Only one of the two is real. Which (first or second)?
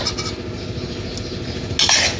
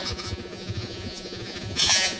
first